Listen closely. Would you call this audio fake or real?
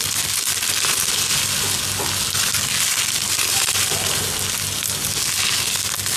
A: real